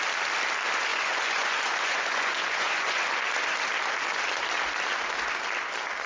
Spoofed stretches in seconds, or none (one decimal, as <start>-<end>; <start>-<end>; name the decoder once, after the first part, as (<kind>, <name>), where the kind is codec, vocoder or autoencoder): 0.9-3.0 (vocoder, Vocos)